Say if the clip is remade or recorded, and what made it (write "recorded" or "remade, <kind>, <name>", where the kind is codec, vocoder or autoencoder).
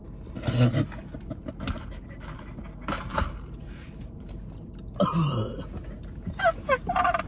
recorded